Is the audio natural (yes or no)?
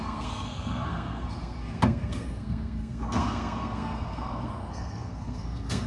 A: no